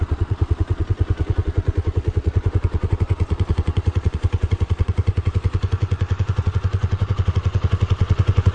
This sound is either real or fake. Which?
fake